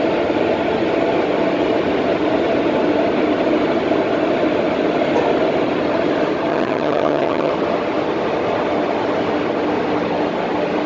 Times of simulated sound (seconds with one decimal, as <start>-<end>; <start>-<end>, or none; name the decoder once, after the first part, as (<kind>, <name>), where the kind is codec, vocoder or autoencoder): 6.5-7.5 (vocoder, HiFi-GAN)